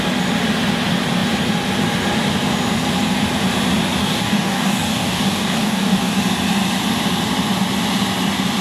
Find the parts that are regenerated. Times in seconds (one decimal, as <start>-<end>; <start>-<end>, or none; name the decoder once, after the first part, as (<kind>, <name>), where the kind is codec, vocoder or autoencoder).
4.0-6.2 (codec, DAC)